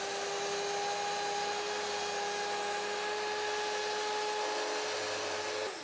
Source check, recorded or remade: recorded